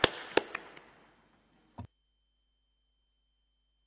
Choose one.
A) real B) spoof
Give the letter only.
A